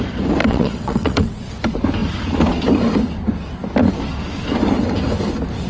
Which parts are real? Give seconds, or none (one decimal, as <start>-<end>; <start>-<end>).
0.0-0.4; 1.5-5.7